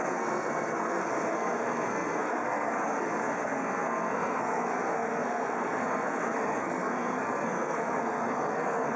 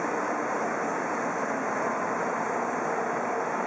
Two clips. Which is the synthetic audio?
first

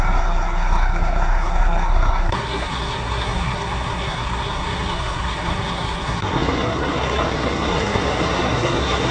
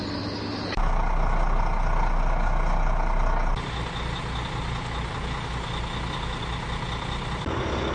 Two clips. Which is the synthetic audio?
first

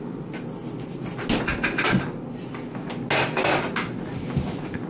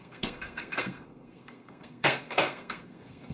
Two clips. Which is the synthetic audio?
second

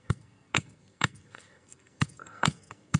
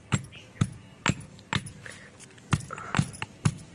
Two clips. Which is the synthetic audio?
first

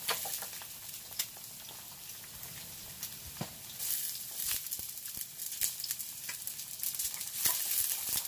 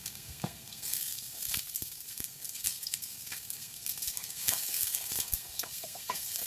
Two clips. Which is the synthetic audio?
second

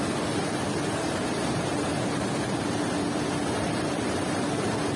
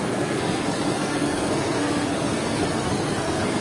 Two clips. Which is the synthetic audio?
second